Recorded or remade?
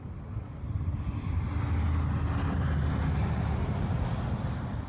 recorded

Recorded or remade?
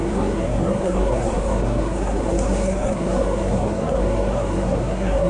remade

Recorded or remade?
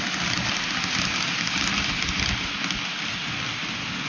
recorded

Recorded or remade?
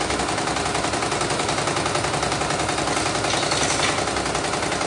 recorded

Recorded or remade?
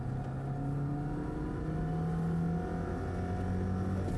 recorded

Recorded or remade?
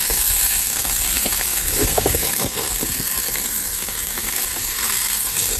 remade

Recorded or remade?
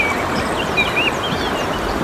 recorded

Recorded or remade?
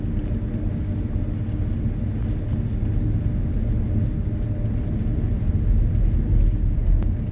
recorded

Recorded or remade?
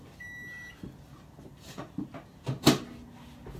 recorded